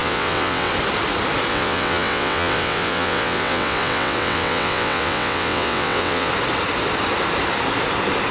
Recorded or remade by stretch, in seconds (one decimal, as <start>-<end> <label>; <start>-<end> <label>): 0.0-0.7 remade; 0.7-1.5 recorded; 1.5-6.3 remade; 6.3-8.3 recorded